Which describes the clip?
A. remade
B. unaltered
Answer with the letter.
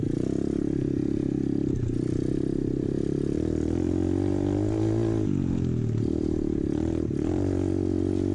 B